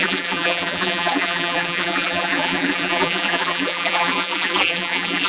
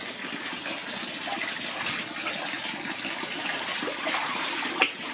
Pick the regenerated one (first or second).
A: first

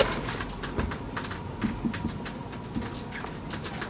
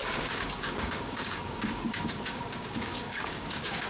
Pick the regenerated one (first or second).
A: second